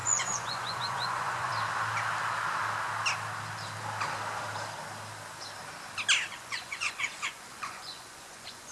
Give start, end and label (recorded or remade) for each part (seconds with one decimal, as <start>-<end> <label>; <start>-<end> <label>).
0.0-1.5 remade; 1.5-6.3 recorded; 6.3-8.7 remade

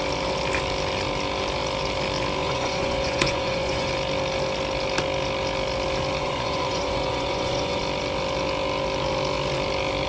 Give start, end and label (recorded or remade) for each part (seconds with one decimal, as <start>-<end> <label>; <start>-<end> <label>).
0.0-2.4 recorded; 2.4-3.9 remade; 3.9-6.2 recorded; 6.2-7.8 remade; 7.8-10.1 recorded

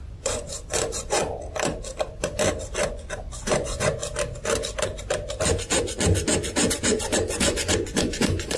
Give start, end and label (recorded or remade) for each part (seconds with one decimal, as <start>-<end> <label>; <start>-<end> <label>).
0.0-1.2 remade; 1.2-2.9 recorded; 2.9-4.0 remade; 4.0-6.7 recorded; 6.7-8.6 remade

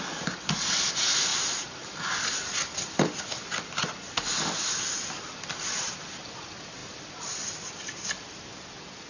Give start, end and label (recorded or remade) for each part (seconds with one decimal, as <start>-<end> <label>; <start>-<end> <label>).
0.0-9.1 recorded